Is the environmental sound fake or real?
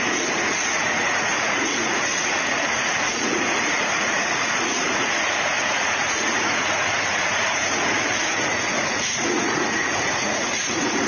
fake